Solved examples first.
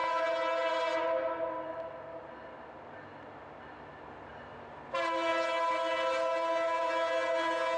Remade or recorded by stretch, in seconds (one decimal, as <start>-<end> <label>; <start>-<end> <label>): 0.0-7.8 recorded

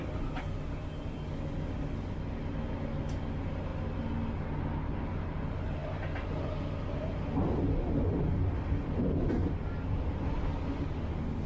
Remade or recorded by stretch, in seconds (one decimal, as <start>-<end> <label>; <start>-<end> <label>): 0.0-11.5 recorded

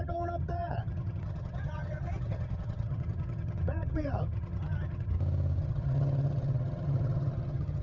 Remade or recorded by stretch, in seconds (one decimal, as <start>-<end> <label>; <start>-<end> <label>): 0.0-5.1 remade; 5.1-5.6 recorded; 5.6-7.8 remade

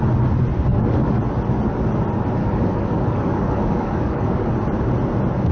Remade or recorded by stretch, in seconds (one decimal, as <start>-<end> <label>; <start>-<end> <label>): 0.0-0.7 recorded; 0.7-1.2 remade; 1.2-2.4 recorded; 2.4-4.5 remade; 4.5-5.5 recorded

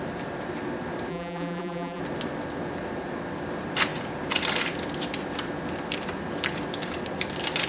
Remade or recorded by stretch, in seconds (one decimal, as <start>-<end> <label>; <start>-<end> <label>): 0.0-1.1 recorded; 1.1-2.0 remade; 2.0-7.7 recorded

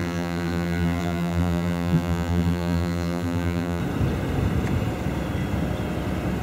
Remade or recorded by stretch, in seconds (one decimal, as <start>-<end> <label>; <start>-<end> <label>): 0.0-3.8 remade; 3.8-6.4 recorded